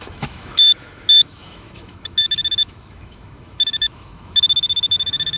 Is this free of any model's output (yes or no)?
no